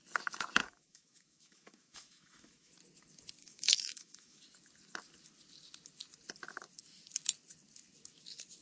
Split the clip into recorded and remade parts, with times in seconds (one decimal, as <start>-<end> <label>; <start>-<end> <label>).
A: 0.0-0.6 recorded; 0.6-2.7 remade; 2.7-3.4 recorded; 3.4-4.4 remade; 4.4-8.6 recorded